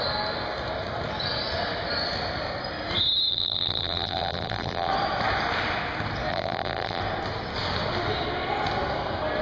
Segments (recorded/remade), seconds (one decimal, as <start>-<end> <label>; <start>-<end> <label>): 0.0-3.3 recorded; 3.3-4.9 remade; 4.9-6.3 recorded; 6.3-7.0 remade; 7.0-9.4 recorded